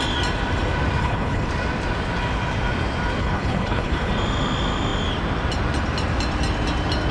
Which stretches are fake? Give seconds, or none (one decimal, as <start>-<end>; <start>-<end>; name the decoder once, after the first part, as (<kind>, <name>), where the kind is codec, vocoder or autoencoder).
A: 1.0-1.5 (codec, HILCodec); 3.2-4.1